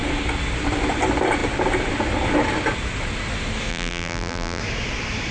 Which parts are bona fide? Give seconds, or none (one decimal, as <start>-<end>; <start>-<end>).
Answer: 0.0-3.7; 4.6-5.3